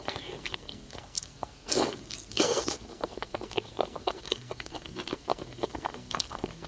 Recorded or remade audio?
remade